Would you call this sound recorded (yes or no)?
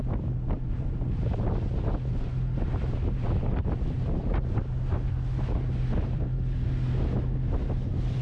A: yes